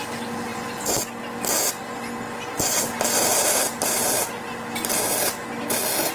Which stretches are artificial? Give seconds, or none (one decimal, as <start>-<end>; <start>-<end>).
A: 3.2-4.7